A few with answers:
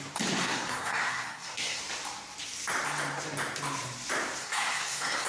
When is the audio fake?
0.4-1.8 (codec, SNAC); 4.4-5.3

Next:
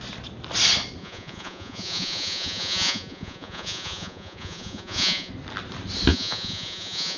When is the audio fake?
1.0-5.3 (vocoder, Vocos); 6.1-7.2

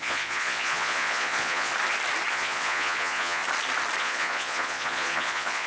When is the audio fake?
0.0-1.7 (vocoder, Vocos); 2.3-3.4; 4.0-5.7